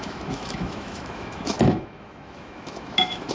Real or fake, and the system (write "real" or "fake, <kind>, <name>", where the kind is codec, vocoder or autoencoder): fake, autoencoder, DAC-VAE